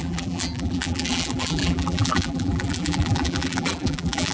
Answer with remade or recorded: remade